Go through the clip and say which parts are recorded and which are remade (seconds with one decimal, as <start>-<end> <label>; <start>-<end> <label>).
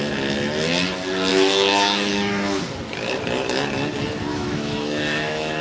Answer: 0.0-1.3 recorded; 1.3-2.6 remade; 2.6-4.3 recorded; 4.3-5.6 remade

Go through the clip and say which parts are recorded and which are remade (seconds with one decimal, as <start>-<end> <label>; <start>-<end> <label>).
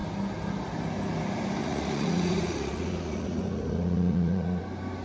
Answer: 0.0-1.6 recorded; 1.6-4.6 remade; 4.6-5.0 recorded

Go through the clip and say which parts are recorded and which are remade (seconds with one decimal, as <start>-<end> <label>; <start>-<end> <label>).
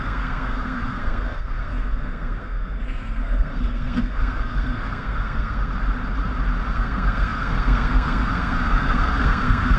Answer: 0.0-5.7 remade; 5.7-6.7 recorded; 6.7-9.8 remade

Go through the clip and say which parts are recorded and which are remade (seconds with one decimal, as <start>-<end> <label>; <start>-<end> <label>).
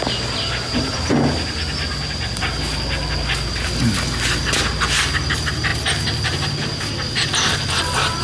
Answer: 0.0-8.2 recorded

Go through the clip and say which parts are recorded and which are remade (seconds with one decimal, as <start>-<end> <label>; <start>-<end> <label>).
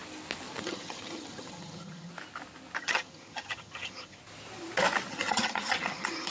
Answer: 0.0-0.6 recorded; 0.6-2.1 remade; 2.1-2.8 recorded; 2.8-4.2 remade; 4.2-5.1 recorded; 5.1-6.3 remade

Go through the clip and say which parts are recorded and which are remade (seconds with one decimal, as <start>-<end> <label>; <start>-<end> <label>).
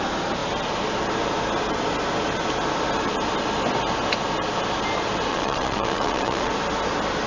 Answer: 0.0-5.3 recorded; 5.3-6.5 remade; 6.5-7.3 recorded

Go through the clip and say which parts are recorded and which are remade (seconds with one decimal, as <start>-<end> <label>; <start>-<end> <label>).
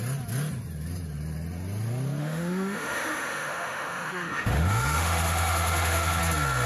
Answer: 0.0-2.2 recorded; 2.2-6.2 remade; 6.2-6.7 recorded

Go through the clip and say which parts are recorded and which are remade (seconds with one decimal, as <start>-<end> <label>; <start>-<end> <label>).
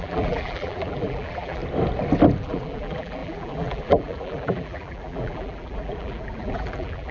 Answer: 0.0-1.6 remade; 1.6-2.4 recorded; 2.4-7.1 remade